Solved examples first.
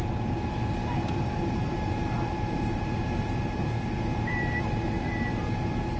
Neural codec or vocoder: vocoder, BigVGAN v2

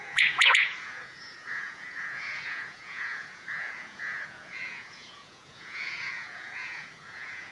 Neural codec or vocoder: vocoder, Vocos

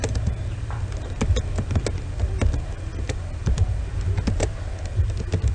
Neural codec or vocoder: none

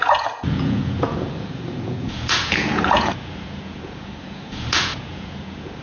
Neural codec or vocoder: vocoder, Vocos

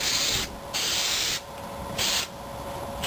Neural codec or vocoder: none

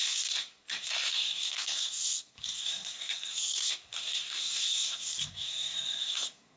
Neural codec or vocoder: codec, SNAC